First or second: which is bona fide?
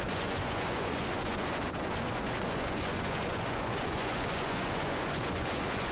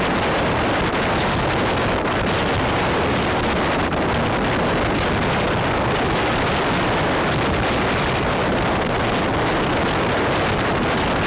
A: second